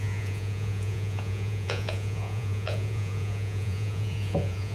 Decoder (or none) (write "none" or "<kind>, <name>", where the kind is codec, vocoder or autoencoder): vocoder, Vocos